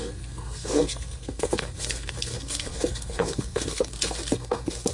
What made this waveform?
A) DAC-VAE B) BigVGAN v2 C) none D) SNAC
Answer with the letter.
D